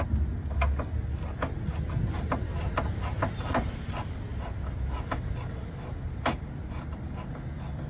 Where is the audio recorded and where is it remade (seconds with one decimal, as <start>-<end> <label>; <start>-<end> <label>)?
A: 0.0-7.9 recorded